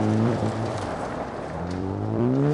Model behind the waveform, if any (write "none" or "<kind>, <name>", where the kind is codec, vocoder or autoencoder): vocoder, BigVGAN v2